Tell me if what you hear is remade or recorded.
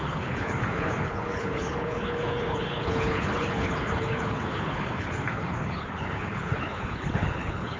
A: remade